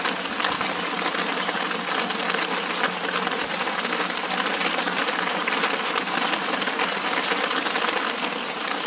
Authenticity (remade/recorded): recorded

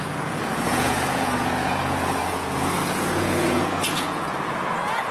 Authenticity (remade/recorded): remade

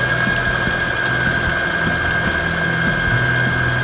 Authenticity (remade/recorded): recorded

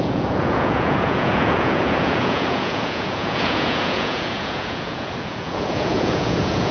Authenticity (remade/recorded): remade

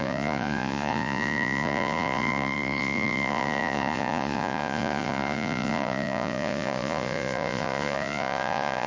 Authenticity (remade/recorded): remade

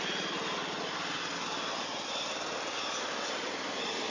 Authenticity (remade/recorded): recorded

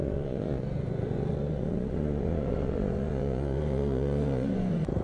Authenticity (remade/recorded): remade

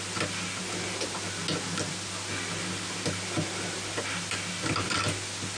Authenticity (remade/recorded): recorded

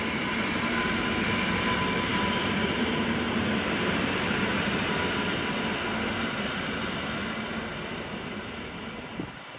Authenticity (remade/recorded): recorded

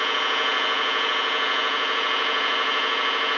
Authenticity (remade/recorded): remade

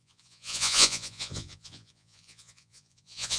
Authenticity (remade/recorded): remade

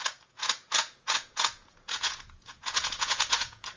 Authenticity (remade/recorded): remade